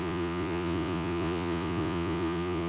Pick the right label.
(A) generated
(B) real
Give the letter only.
A